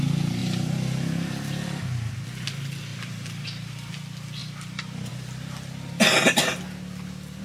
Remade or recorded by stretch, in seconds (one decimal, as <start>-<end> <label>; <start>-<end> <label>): 0.0-0.4 recorded; 0.4-1.3 remade; 1.3-2.9 recorded; 2.9-3.9 remade; 3.9-4.4 recorded; 4.4-5.1 remade; 5.1-7.4 recorded